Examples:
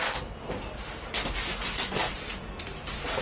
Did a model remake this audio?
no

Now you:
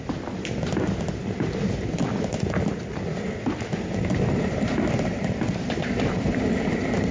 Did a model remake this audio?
yes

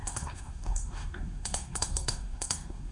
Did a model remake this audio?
yes